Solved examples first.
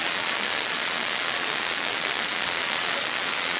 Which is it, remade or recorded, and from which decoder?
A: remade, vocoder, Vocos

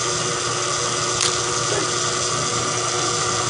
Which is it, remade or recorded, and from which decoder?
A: recorded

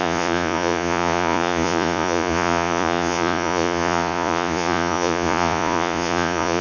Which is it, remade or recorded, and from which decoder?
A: remade, vocoder, Vocos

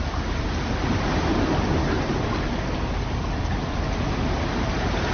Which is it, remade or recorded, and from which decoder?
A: recorded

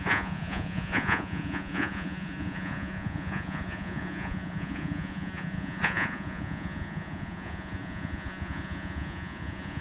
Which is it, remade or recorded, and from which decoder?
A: remade, vocoder, Vocos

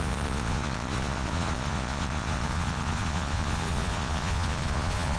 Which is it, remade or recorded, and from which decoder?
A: remade, vocoder, Vocos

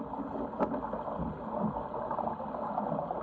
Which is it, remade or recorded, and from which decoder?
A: recorded